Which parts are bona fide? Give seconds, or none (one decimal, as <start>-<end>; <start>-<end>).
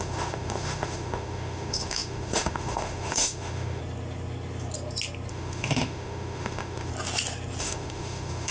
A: 3.8-5.3; 6.9-7.6